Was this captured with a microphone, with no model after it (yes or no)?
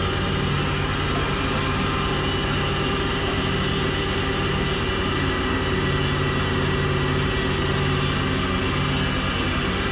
yes